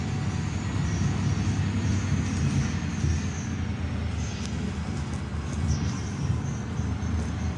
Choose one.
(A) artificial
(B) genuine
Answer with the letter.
B